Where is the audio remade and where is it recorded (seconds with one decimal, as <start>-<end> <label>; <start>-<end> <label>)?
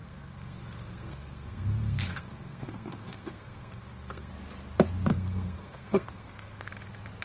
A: 0.0-4.3 remade; 4.3-5.1 recorded; 5.1-6.7 remade; 6.7-7.2 recorded